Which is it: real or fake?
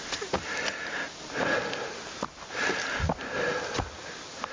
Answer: real